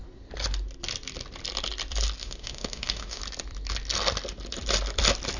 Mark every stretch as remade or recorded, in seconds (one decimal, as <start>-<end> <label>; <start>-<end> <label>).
0.0-2.2 recorded; 2.2-3.2 remade; 3.2-5.4 recorded